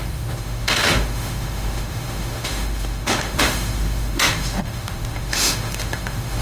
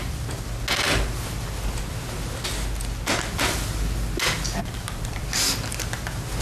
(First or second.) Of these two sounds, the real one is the second